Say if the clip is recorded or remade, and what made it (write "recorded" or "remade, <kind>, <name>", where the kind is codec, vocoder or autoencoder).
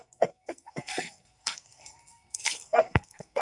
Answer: remade, codec, SNAC